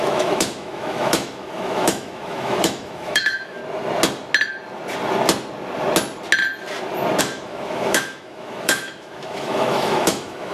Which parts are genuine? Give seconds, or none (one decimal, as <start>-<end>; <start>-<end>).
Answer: 3.6-7.2